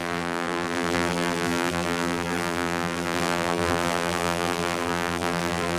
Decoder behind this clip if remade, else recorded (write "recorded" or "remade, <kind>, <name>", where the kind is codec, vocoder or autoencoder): remade, vocoder, BigVGAN v2